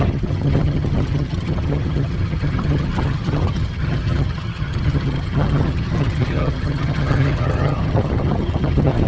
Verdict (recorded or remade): remade